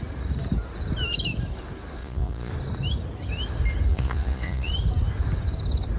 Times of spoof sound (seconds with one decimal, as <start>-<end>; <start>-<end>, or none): 2.0-2.5; 3.9-4.7